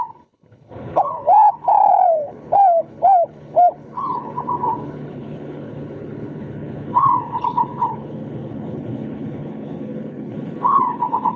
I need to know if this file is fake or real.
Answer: fake